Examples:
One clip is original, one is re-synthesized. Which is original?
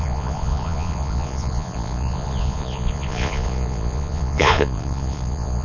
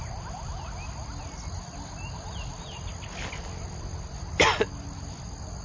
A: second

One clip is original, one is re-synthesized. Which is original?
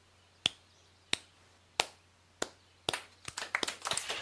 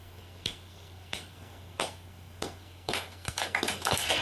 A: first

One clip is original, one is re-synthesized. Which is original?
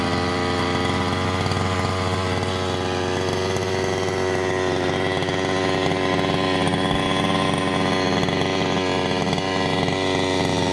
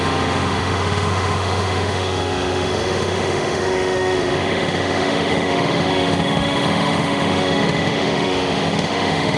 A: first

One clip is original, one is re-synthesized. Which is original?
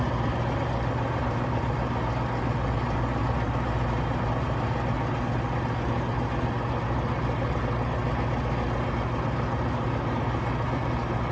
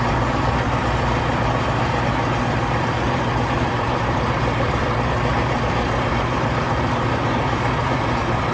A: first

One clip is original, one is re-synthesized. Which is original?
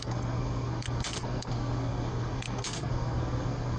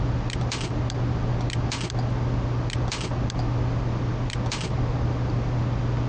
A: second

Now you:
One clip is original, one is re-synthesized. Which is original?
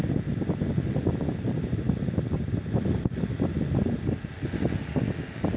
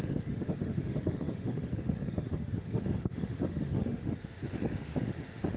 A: first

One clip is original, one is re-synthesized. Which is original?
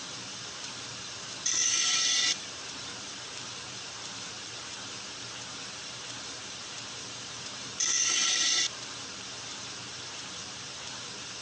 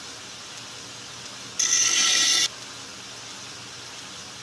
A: second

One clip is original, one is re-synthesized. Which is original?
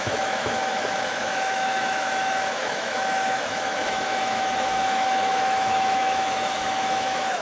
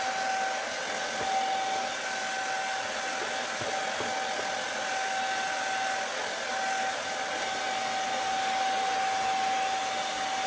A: second